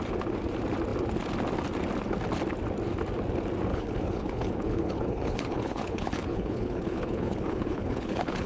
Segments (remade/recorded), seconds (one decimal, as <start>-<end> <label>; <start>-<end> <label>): 0.0-3.7 recorded; 3.7-8.5 remade